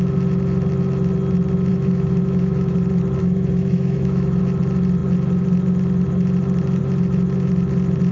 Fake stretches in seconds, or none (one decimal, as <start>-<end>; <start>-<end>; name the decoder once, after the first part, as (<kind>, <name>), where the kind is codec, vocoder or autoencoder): 1.7-2.7 (autoencoder, DAC-VAE); 3.2-4.4